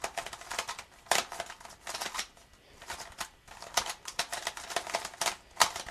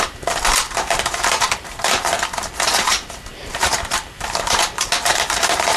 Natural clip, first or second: first